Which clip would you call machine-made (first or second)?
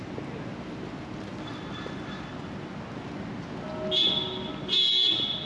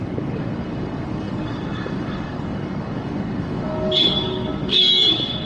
second